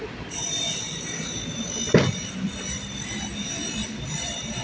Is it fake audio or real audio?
fake